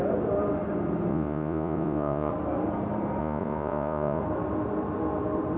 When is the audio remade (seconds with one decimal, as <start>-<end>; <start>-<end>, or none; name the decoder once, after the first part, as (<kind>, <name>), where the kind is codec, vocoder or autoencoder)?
1.1-2.3 (vocoder, Vocos); 3.2-4.2